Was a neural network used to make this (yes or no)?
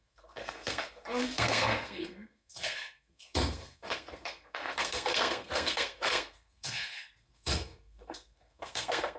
yes